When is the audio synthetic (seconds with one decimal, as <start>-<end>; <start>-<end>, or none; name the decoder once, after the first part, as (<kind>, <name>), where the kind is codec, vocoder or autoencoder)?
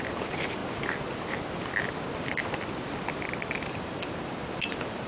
0.0-0.6 (vocoder, BigVGAN v2); 3.7-5.1